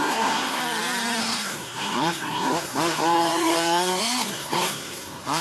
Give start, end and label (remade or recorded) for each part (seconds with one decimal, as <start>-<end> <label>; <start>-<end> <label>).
0.0-0.6 remade; 0.6-1.2 recorded; 1.2-5.4 remade